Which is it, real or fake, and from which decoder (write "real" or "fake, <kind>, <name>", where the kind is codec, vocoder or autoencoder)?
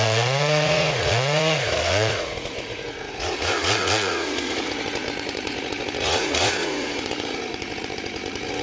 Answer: fake, vocoder, Vocos